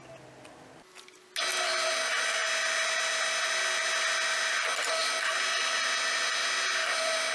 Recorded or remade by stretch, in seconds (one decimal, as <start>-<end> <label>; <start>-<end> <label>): 0.0-7.3 recorded